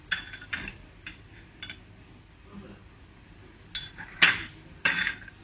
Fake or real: real